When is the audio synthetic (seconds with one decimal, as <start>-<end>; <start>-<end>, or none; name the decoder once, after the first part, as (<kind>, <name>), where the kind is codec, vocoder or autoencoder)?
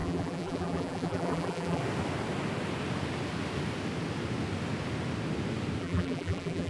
0.0-1.8 (vocoder, BigVGAN v2); 5.8-6.7